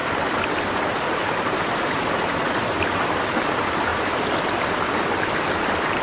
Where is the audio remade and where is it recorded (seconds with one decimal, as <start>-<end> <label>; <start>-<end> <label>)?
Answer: 0.0-0.8 recorded; 0.8-3.9 remade; 3.9-6.0 recorded